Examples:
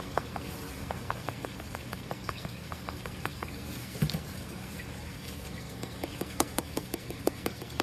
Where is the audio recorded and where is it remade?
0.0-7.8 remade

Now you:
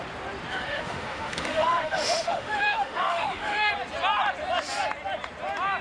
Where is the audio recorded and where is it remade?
0.0-0.5 recorded; 0.5-3.7 remade; 3.7-5.8 recorded